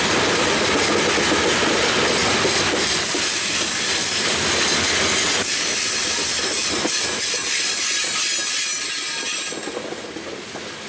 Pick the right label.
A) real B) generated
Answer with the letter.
A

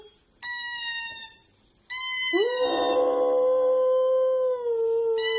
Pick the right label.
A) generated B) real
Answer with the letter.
B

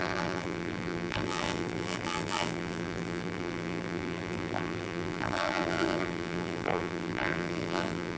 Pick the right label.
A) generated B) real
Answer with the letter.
A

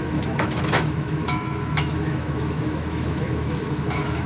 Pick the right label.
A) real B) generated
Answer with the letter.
B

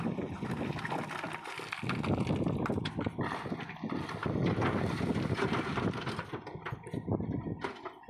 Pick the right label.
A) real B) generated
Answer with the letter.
A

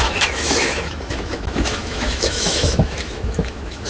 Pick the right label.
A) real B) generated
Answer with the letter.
B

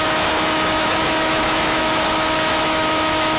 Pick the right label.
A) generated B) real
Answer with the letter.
A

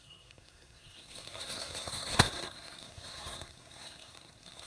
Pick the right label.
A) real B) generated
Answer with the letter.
B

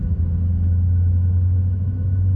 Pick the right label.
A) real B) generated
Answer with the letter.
A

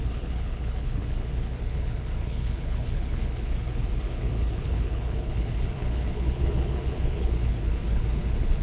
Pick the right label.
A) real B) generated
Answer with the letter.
B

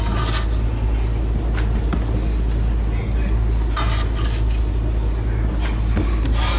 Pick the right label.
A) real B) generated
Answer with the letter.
A